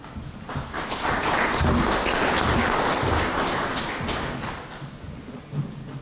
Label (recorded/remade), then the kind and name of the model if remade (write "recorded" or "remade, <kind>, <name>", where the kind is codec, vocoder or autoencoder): recorded